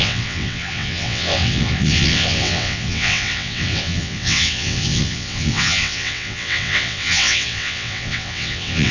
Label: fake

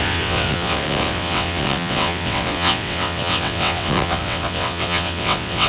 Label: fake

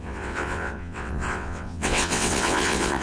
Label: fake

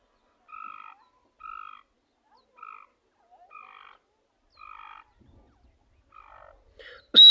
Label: real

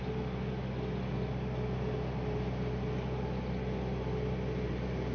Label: real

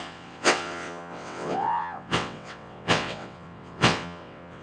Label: fake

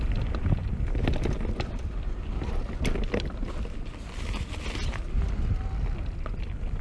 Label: real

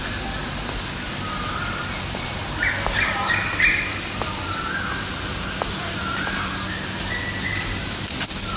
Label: real